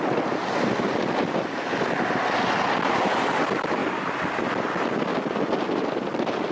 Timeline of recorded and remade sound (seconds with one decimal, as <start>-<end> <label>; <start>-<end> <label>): 0.0-6.5 recorded